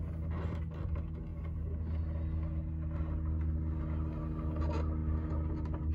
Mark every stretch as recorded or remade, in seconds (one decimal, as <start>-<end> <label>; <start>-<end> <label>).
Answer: 0.0-5.9 recorded